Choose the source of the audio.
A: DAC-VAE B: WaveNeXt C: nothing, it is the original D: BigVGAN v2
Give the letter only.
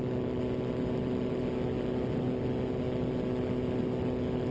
C